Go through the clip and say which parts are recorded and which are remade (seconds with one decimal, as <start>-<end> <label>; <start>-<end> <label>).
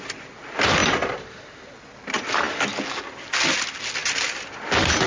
0.0-5.1 recorded